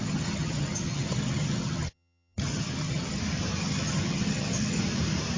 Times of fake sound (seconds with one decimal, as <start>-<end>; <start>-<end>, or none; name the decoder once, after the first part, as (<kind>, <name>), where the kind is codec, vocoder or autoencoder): 0.0-3.2 (vocoder, HiFi-GAN); 3.6-4.8